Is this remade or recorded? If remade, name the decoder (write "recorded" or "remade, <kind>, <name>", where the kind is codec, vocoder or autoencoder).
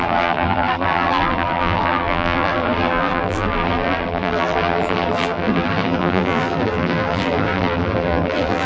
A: remade, vocoder, BigVGAN v2